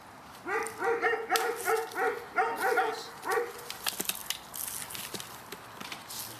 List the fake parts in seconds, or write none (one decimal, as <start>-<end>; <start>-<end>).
none